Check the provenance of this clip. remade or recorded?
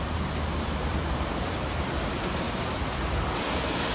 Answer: remade